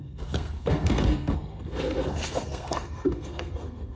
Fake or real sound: fake